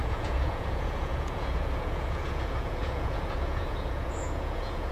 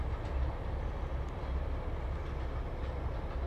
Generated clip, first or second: first